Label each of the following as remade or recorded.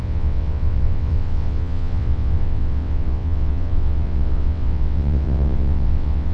remade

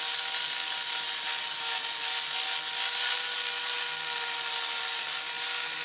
recorded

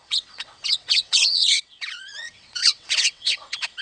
remade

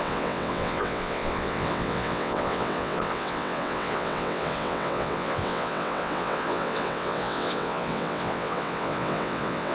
remade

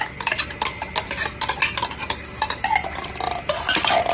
recorded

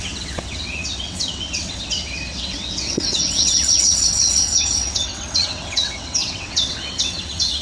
remade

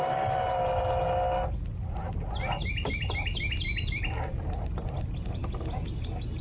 recorded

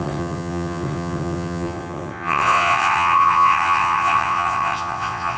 remade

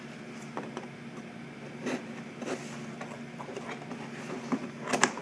recorded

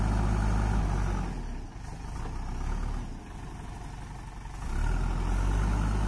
recorded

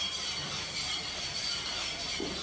recorded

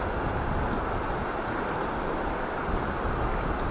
recorded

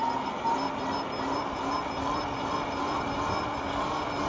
recorded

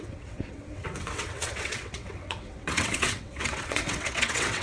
remade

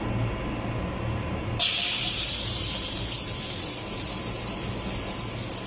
recorded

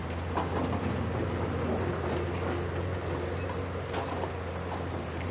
recorded